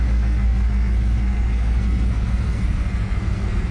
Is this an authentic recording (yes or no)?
no